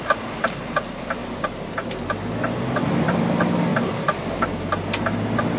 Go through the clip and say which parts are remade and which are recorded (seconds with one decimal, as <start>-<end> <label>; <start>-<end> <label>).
0.0-5.6 recorded

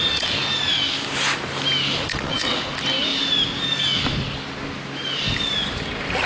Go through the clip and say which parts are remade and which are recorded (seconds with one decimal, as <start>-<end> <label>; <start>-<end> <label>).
0.0-2.1 recorded; 2.1-2.6 remade; 2.6-6.3 recorded

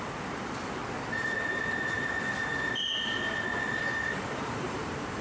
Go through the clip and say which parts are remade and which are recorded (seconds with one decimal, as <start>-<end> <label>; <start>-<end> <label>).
0.0-0.8 remade; 0.8-3.9 recorded; 3.9-5.2 remade